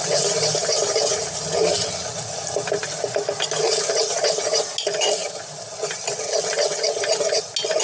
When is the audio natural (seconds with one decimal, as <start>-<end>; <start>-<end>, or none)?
0.0-7.8

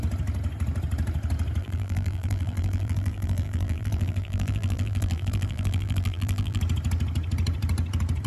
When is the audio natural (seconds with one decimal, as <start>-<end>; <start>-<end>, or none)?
0.0-1.6; 6.6-8.3

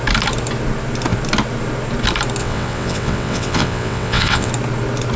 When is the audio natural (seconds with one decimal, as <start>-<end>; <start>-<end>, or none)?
0.0-2.4; 4.5-5.2

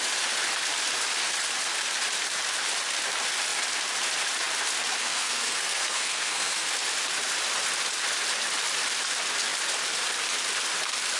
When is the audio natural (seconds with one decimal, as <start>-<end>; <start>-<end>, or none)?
0.0-5.0; 6.7-11.2

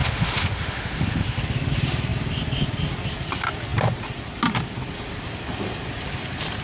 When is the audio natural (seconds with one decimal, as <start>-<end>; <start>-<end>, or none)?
1.4-6.6